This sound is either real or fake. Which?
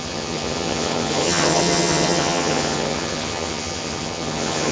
fake